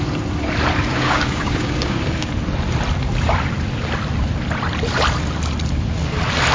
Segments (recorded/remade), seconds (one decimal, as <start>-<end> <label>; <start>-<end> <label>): 0.0-0.9 recorded; 0.9-2.3 remade; 2.3-6.5 recorded